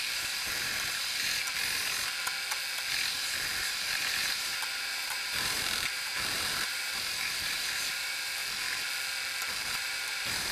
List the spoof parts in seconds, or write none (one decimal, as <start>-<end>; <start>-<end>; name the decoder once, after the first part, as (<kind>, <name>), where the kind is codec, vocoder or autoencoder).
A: 0.0-1.8 (vocoder, BigVGAN v2); 3.5-8.4; 9.5-10.5